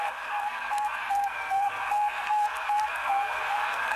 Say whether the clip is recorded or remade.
remade